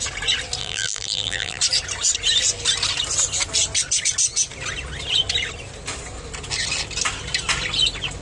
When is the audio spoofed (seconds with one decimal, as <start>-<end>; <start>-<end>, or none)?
0.6-1.6

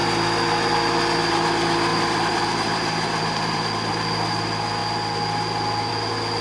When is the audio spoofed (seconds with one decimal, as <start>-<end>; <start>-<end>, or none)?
1.9-3.9

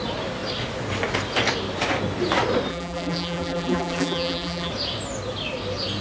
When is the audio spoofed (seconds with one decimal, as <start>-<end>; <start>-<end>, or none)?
2.7-4.7

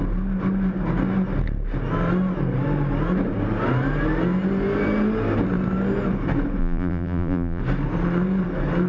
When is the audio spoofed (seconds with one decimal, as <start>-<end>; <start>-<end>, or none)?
6.6-7.6